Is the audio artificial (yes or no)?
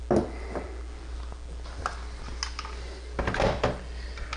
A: no